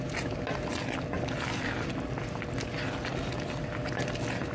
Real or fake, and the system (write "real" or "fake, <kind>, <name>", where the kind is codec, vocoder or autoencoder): real